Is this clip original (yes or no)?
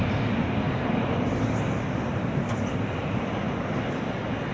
yes